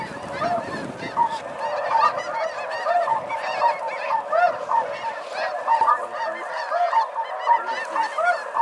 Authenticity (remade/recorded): recorded